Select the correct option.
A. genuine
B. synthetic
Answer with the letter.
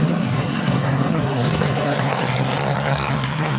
B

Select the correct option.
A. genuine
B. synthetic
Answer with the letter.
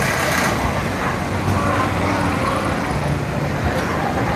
A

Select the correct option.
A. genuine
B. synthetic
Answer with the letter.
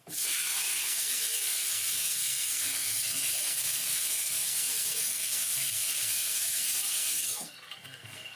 B